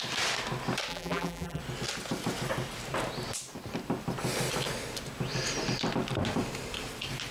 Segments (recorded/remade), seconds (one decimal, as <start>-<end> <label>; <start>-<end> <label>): 0.0-0.9 recorded; 0.9-1.6 remade; 1.6-7.3 recorded